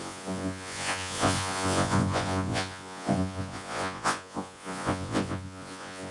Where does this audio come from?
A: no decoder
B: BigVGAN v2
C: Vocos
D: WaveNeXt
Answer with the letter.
C